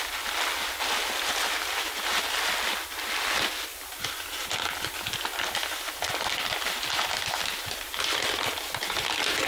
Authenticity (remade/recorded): recorded